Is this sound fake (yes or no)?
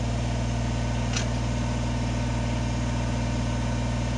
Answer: no